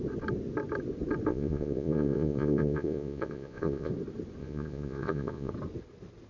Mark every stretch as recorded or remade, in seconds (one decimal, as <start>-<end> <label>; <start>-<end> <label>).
0.0-1.3 recorded; 1.3-3.9 remade; 3.9-4.4 recorded; 4.4-5.5 remade; 5.5-6.3 recorded